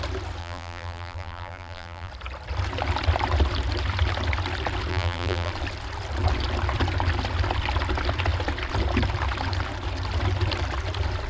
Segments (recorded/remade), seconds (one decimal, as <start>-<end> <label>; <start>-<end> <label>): 0.0-0.4 recorded; 0.4-2.1 remade; 2.1-4.9 recorded; 4.9-5.5 remade; 5.5-11.3 recorded